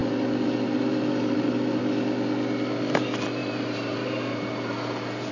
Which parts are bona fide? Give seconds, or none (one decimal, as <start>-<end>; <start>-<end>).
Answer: 1.8-3.4